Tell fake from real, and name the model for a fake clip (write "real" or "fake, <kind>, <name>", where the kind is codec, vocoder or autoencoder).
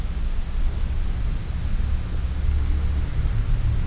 real